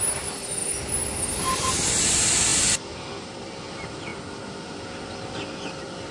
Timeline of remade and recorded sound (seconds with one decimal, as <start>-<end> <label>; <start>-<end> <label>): 0.0-6.1 recorded